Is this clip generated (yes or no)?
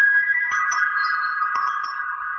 yes